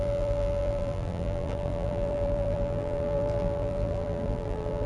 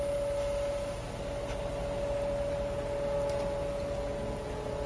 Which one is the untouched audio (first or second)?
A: second